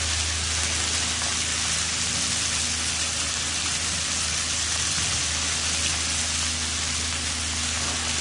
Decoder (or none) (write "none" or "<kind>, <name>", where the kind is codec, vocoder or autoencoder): none